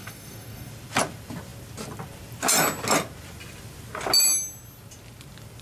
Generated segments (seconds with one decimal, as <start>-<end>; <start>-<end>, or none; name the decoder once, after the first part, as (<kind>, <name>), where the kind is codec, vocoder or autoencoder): 0.0-0.7 (codec, DAC)